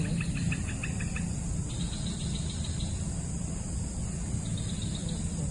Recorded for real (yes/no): yes